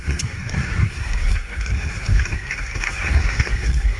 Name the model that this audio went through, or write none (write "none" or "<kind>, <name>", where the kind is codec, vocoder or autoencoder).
codec, SNAC